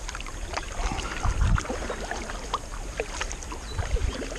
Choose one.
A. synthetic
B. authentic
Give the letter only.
B